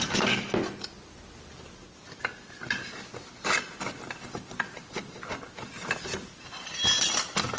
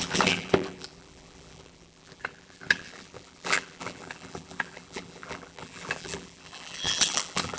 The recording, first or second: first